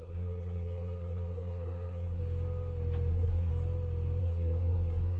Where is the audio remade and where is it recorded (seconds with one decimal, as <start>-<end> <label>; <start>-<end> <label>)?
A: 0.0-2.2 remade; 2.2-3.1 recorded; 3.1-3.5 remade; 3.5-4.2 recorded; 4.2-5.2 remade